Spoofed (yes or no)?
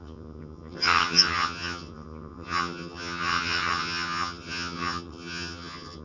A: yes